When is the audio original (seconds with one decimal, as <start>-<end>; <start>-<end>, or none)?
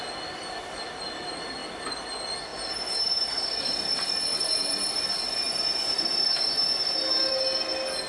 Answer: 0.0-1.6; 2.1-4.3; 7.3-8.1